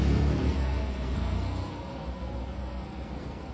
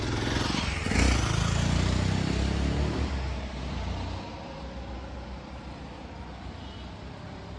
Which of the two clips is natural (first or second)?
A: second